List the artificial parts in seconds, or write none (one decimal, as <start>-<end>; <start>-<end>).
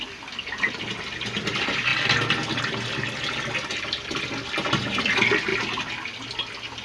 none